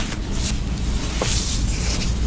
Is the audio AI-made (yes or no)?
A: no